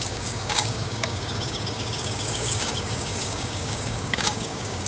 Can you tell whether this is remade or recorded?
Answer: remade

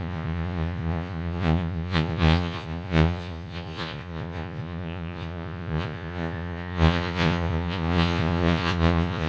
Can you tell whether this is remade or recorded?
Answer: remade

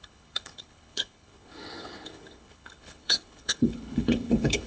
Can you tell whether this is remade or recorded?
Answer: remade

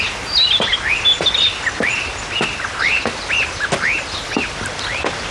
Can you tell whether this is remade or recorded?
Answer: recorded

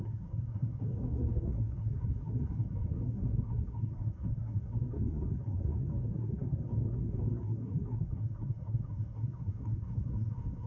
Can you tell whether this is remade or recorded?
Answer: remade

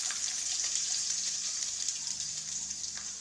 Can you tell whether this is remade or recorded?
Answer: remade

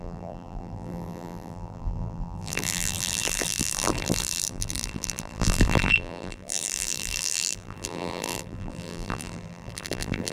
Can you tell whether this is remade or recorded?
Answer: remade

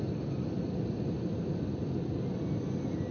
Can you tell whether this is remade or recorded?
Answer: recorded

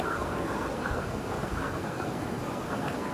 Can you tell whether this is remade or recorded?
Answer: remade